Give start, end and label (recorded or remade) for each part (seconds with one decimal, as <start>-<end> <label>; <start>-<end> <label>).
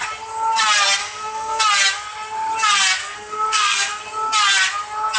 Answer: 0.0-1.0 recorded; 1.0-1.6 remade; 1.6-3.0 recorded; 3.0-4.0 remade; 4.0-5.2 recorded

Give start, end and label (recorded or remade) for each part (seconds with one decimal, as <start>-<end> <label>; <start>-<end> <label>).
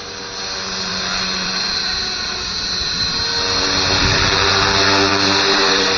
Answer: 0.0-0.9 recorded; 0.9-4.5 remade; 4.5-5.1 recorded; 5.1-6.0 remade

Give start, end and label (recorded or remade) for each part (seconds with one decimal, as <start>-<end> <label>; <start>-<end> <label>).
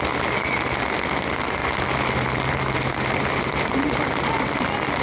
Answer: 0.0-1.6 recorded; 1.6-4.6 remade; 4.6-5.0 recorded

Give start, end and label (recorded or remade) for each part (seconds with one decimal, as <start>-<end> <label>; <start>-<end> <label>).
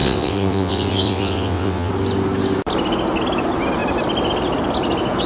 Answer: 0.0-1.9 remade; 1.9-5.3 recorded